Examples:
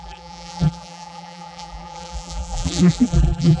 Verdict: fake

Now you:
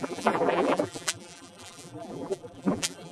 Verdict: fake